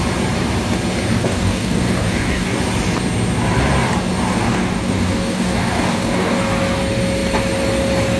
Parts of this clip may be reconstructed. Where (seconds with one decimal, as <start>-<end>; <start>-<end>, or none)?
1.1-2.6; 4.3-6.4